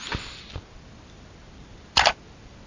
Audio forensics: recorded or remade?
recorded